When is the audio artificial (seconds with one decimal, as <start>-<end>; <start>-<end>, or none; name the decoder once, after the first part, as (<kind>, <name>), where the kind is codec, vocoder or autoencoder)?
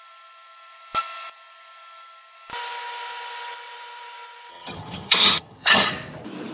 4.5-5.9 (vocoder, HiFi-GAN)